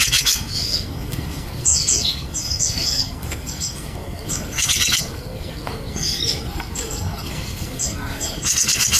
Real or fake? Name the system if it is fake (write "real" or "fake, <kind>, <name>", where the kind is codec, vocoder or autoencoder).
fake, codec, SNAC